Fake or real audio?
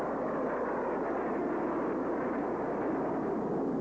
real